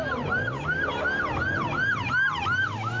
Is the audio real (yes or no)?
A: yes